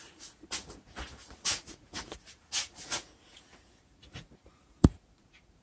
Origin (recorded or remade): remade